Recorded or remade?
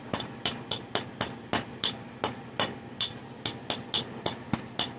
recorded